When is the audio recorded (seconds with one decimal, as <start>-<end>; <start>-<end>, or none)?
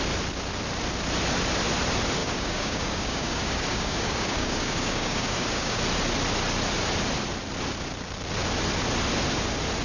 0.0-2.2; 5.8-9.8